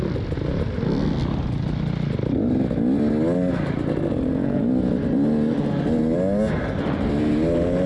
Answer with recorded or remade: recorded